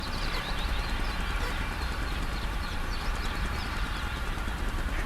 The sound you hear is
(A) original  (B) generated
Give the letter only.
B